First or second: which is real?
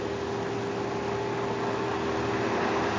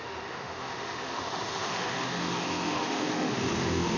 first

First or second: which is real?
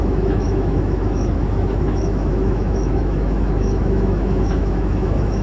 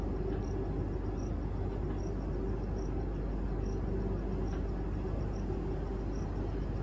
second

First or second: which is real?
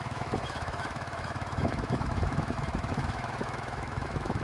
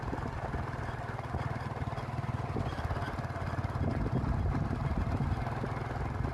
second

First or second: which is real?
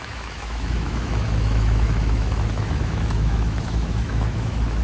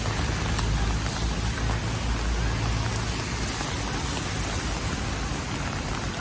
second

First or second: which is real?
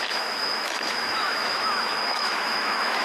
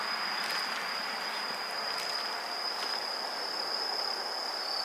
second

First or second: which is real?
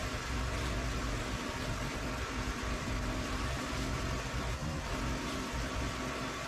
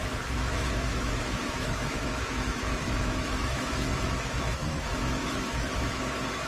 first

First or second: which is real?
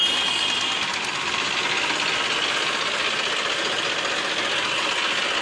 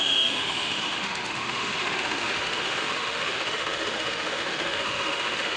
first